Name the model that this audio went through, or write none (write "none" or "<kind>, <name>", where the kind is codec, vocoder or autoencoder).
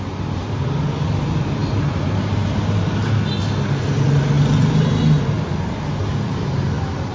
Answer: none